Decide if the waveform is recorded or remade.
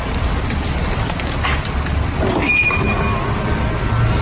recorded